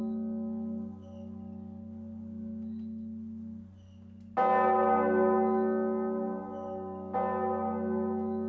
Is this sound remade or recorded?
recorded